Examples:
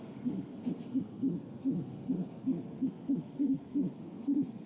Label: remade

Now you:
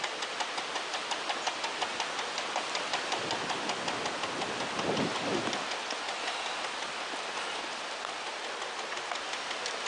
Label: recorded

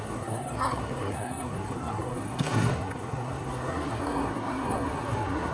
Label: remade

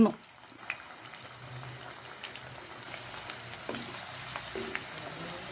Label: recorded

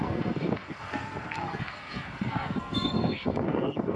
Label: remade